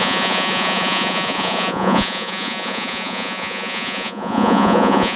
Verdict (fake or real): fake